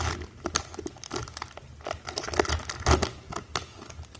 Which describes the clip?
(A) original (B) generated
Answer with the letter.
A